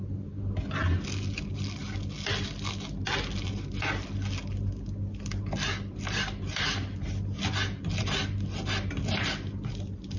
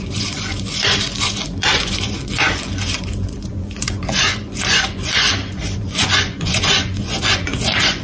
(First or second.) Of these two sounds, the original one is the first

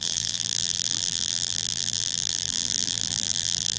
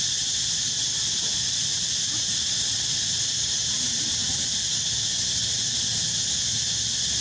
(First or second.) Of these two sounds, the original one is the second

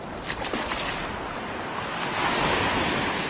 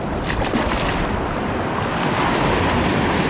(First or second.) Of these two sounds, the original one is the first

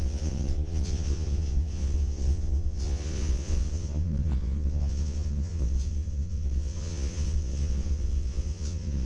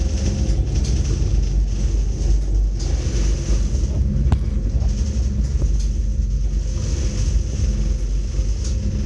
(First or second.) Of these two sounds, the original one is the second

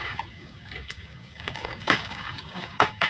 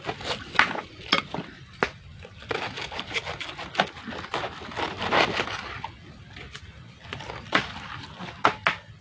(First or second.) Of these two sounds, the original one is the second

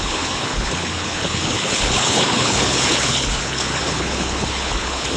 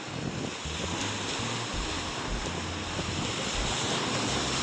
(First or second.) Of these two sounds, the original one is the second